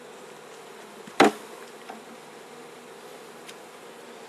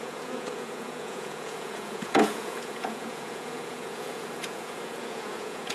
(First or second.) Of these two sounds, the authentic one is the first